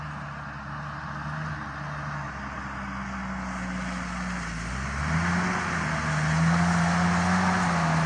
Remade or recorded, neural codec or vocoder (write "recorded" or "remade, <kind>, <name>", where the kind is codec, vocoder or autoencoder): recorded